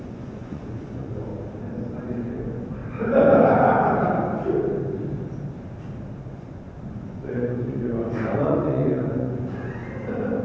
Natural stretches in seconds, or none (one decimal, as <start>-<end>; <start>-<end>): 1.3-2.0; 2.8-6.2; 9.8-10.4